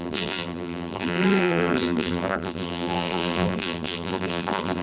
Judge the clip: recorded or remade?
remade